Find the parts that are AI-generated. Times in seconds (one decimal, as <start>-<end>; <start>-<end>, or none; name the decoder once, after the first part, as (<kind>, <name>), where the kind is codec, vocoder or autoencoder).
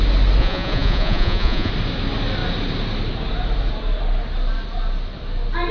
0.4-1.7 (vocoder, Vocos)